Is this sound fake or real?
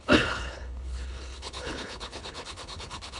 fake